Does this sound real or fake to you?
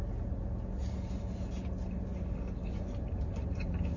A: real